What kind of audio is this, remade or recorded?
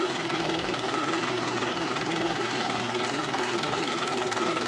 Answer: remade